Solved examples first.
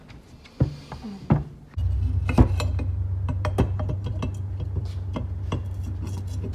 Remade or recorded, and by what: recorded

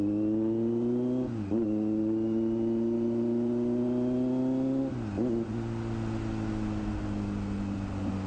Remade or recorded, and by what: recorded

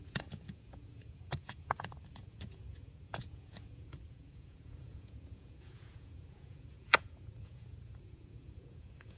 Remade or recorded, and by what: remade, vocoder, Vocos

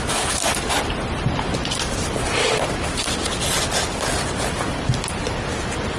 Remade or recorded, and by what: recorded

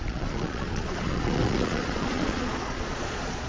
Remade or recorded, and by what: remade, vocoder, Vocos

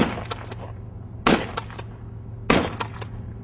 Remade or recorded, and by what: recorded